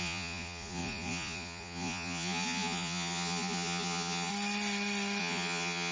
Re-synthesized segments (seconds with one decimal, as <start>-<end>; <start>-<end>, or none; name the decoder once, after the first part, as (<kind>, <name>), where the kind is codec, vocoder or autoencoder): 0.0-4.3 (vocoder, Vocos); 5.2-5.9